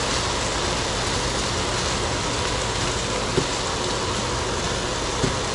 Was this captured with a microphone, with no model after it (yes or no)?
yes